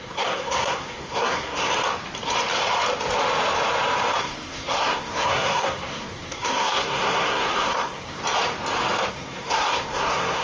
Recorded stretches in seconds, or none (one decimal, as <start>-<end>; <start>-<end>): 1.7-4.2; 8.2-9.1